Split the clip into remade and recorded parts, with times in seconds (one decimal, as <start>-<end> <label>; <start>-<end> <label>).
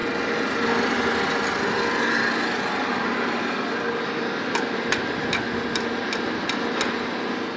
0.0-7.6 recorded